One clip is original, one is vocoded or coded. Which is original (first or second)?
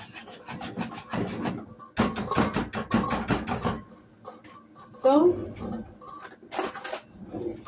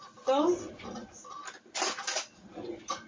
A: first